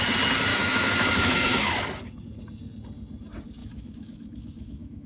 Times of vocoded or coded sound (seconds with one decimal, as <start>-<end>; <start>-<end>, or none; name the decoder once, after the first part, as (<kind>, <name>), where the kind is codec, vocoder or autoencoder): 0.5-1.8 (autoencoder, DAC-VAE); 3.6-5.1